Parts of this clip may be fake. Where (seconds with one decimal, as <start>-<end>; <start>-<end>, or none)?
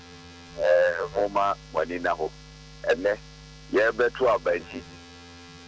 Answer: 0.0-1.2; 4.6-5.7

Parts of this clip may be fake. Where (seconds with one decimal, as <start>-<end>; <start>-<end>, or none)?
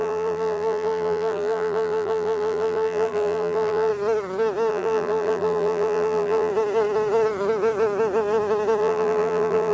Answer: 0.0-3.9; 4.7-6.5; 8.8-9.7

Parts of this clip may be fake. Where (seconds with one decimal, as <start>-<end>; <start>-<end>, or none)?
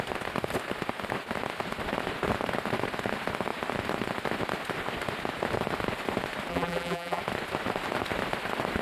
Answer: 6.5-7.2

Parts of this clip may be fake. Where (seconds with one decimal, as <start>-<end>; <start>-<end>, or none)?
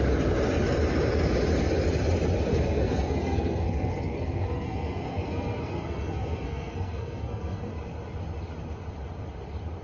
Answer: 2.5-7.7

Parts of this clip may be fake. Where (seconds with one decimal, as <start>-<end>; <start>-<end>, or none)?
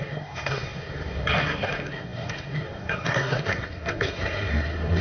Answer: 0.0-5.0